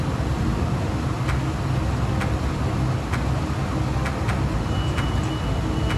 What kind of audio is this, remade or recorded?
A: recorded